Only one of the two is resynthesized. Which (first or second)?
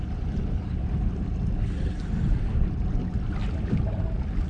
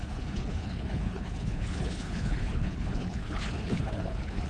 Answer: second